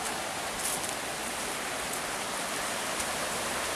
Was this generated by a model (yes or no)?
no